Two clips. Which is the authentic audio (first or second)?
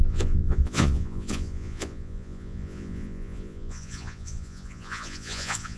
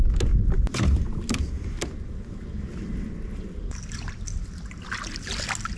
second